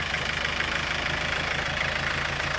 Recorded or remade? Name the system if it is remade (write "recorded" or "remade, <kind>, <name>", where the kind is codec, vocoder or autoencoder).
recorded